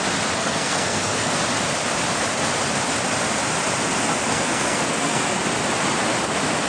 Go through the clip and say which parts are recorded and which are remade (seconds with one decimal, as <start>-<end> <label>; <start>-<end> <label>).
0.0-0.4 recorded; 0.4-1.4 remade; 1.4-4.3 recorded; 4.3-5.4 remade; 5.4-6.7 recorded